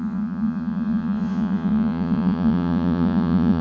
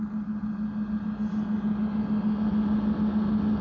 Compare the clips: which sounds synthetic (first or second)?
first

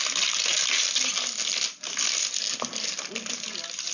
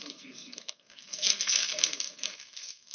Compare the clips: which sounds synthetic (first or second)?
second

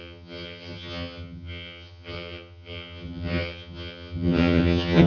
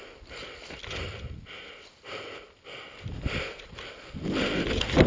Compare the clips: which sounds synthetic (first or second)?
first